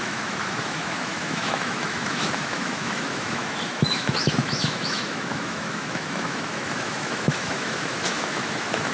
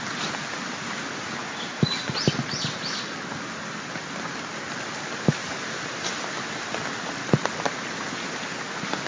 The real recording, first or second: second